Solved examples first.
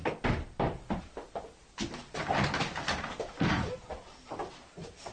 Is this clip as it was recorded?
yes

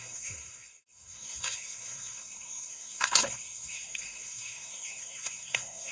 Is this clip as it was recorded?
no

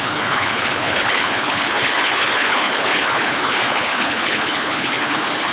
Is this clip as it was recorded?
no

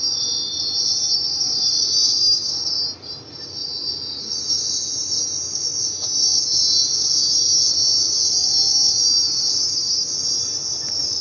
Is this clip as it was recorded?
yes